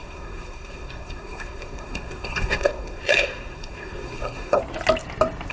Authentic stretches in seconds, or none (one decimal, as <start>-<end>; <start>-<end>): 4.6-5.5